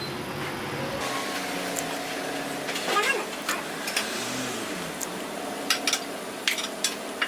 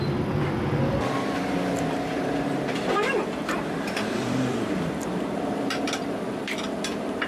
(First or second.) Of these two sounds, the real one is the first